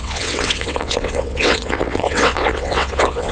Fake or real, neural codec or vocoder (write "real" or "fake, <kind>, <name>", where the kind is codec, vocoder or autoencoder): fake, vocoder, WaveNeXt